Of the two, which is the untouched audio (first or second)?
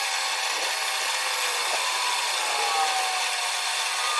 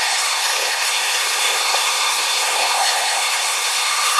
first